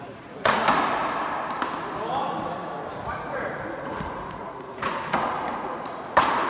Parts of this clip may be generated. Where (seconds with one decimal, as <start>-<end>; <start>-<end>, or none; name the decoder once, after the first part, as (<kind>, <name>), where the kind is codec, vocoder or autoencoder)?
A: 0.0-0.6 (vocoder, Vocos); 2.9-6.5